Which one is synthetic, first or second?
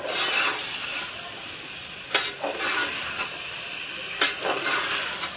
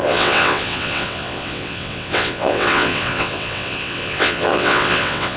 second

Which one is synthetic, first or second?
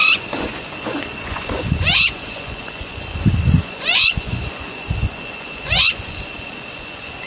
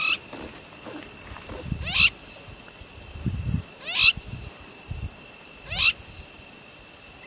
first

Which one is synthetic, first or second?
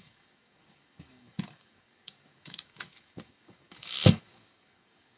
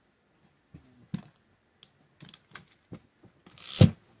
first